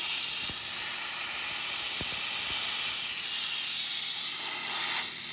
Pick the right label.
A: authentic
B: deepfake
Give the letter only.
A